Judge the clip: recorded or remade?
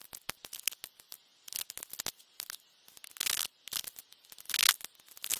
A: recorded